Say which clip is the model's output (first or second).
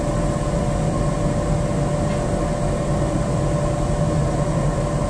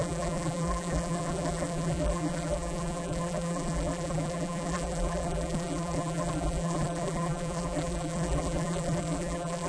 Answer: second